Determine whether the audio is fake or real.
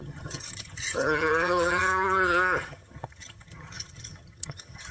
fake